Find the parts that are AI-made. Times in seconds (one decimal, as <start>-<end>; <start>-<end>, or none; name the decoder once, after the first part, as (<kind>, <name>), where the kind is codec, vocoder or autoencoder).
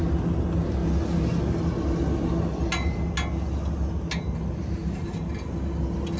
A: none